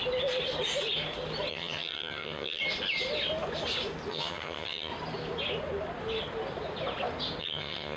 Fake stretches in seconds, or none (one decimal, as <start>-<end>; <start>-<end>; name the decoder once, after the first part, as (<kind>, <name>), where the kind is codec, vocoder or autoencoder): 1.5-2.6 (vocoder, HiFi-GAN); 4.1-4.9; 7.4-8.0